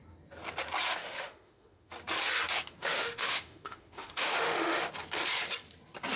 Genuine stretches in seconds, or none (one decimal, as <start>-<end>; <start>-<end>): 0.0-0.9; 1.9-2.8; 4.9-6.2